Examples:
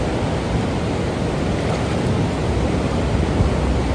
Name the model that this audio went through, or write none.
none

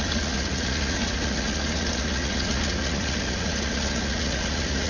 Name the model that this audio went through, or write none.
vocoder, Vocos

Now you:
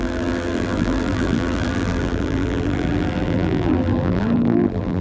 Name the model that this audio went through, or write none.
vocoder, BigVGAN v2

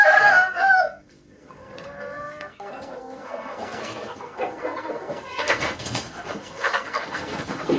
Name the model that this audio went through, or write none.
codec, SNAC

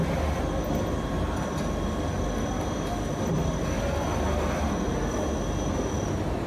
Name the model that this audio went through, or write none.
none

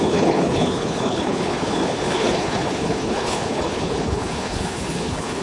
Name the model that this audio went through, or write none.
codec, HILCodec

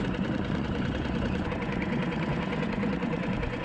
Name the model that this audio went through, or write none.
vocoder, Vocos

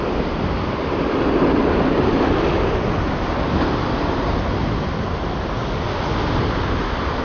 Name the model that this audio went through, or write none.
none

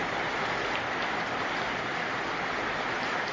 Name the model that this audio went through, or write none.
none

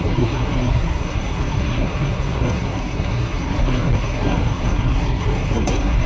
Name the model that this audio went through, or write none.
codec, SNAC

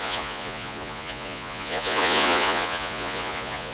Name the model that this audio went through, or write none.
vocoder, Vocos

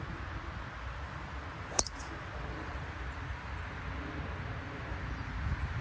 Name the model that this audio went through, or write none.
none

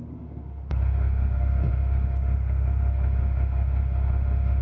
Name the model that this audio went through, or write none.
autoencoder, DAC-VAE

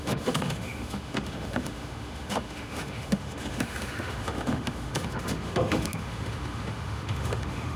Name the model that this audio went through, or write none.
autoencoder, DAC-VAE